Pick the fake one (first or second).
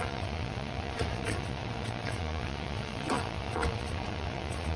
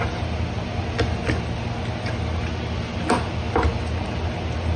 first